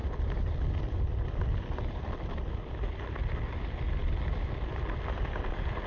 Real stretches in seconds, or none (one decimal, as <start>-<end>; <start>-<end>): 0.0-5.9